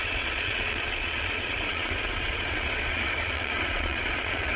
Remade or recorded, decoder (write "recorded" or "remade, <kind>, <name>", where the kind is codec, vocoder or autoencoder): remade, vocoder, Vocos